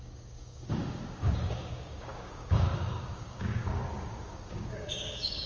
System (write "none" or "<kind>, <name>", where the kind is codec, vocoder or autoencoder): codec, DAC